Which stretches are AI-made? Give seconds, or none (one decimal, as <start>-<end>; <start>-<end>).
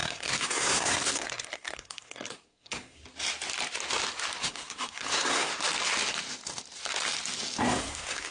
0.0-3.0; 4.4-5.5; 7.6-8.3